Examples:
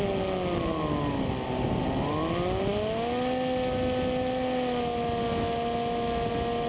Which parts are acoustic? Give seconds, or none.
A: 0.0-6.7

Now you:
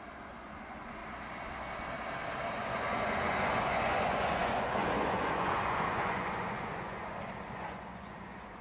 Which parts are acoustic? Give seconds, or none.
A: 1.0-2.5

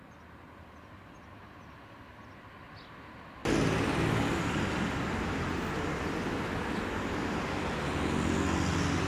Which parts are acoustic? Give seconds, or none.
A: 0.0-9.1